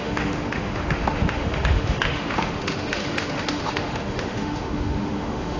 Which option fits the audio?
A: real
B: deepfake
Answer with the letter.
B